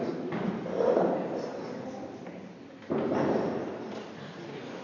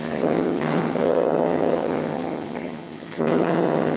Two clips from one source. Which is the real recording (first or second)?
first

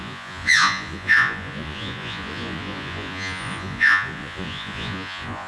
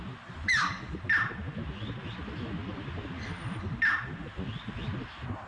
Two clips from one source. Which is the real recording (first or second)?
second